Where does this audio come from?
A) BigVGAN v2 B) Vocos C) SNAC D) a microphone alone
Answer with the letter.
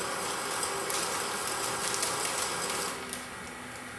D